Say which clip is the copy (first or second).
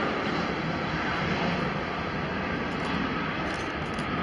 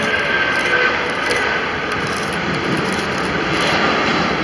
second